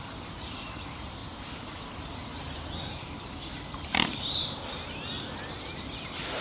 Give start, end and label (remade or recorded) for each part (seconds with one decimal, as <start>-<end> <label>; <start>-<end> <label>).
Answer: 0.0-1.2 remade; 1.2-2.4 recorded; 2.4-5.1 remade; 5.1-5.6 recorded; 5.6-6.4 remade